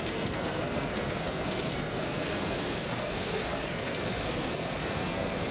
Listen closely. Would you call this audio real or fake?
fake